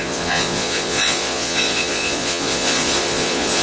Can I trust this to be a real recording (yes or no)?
no